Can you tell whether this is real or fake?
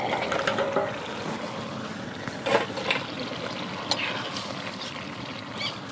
real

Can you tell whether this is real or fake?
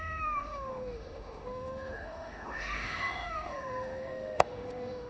fake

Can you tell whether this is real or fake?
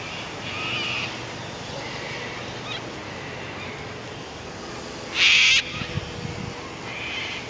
real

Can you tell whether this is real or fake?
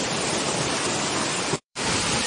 fake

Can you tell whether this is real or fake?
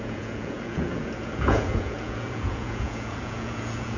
fake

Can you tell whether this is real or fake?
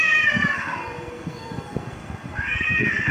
fake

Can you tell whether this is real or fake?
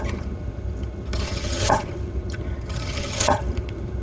fake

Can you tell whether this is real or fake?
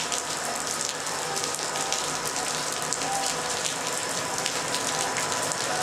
fake